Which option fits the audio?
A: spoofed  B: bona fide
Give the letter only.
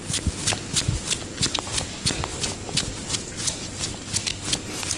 B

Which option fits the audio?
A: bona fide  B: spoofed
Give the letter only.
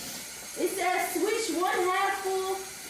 A